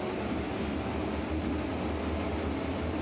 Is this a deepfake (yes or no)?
no